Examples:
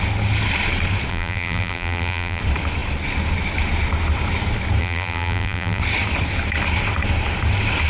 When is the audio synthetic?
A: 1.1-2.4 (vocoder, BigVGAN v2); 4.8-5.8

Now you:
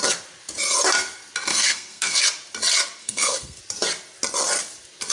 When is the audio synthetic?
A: 1.5-2.2 (codec, SNAC); 3.0-3.6